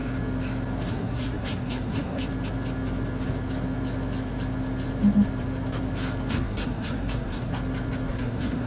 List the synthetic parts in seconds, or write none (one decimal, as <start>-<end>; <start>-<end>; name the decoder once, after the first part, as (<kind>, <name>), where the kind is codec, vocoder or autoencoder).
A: 0.9-2.2 (codec, SNAC); 6.3-7.5; 8.1-8.7